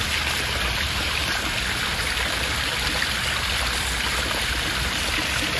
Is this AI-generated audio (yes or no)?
no